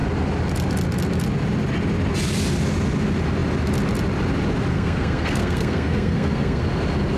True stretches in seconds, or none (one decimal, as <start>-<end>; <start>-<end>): 0.0-4.7; 6.6-7.2

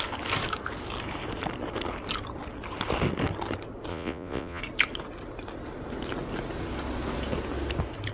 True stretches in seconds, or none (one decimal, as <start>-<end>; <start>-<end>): 0.0-3.9; 4.6-8.1

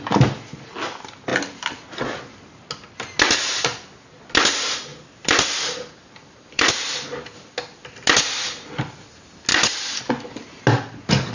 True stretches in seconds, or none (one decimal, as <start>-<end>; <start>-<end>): 0.0-4.9; 6.7-9.5; 10.0-11.3

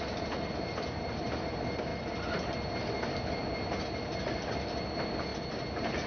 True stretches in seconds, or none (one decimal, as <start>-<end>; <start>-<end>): 0.0-6.1

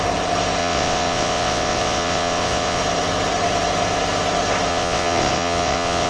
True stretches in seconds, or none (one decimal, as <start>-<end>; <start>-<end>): 0.0-0.6; 2.8-4.7

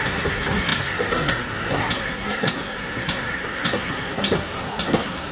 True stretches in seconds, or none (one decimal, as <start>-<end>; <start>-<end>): none